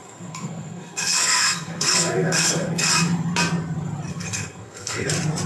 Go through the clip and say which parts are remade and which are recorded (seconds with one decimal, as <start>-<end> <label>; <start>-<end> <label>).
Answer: 0.0-2.9 remade; 2.9-4.1 recorded; 4.1-5.1 remade; 5.1-5.5 recorded